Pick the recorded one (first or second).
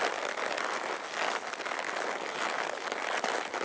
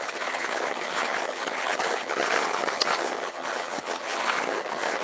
first